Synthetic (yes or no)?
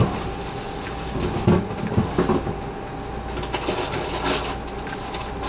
no